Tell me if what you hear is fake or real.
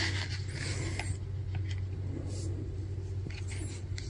real